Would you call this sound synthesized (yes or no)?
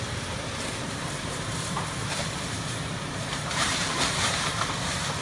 yes